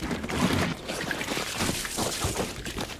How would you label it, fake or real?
real